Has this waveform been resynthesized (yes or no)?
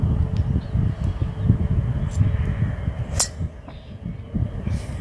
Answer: no